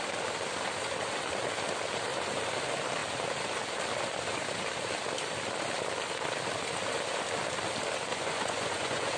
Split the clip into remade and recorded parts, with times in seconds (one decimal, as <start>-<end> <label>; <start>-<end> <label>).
0.0-8.1 recorded; 8.1-9.2 remade